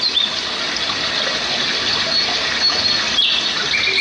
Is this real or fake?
real